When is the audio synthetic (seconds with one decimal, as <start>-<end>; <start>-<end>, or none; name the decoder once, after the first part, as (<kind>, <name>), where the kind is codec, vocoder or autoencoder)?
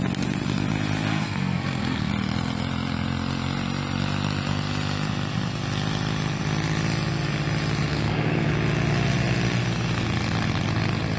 1.1-2.1 (codec, SNAC); 7.9-8.5